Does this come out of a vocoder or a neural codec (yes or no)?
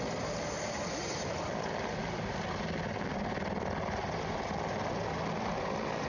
no